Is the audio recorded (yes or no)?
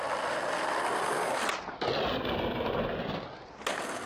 yes